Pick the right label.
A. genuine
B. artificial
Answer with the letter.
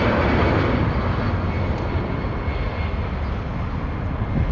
A